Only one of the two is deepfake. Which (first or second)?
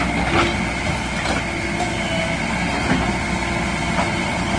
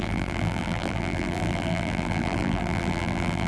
second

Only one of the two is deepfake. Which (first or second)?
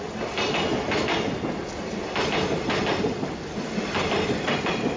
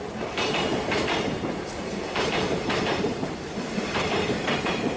second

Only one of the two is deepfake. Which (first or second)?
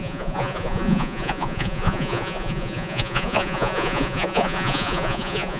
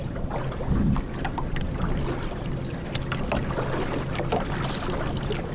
first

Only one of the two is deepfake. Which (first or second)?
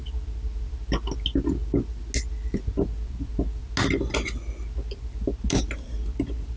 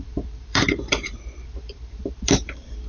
second